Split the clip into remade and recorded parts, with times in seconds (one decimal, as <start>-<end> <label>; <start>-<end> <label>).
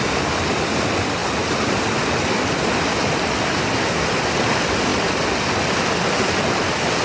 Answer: 0.0-7.0 recorded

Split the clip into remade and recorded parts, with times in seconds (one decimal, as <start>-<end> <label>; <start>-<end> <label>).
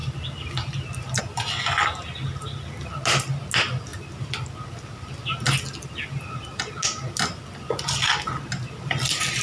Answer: 0.0-9.4 recorded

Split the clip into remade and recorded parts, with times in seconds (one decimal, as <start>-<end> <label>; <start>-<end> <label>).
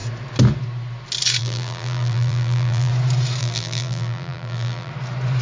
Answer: 0.0-1.4 recorded; 1.4-2.9 remade; 2.9-3.4 recorded; 3.4-4.9 remade; 4.9-5.4 recorded